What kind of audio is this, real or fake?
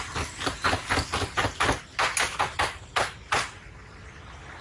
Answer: real